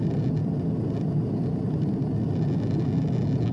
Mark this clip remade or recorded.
recorded